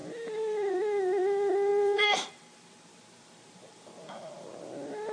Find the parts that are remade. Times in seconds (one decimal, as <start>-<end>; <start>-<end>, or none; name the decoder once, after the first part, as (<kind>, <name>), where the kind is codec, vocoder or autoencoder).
0.0-5.1 (vocoder, BigVGAN v2)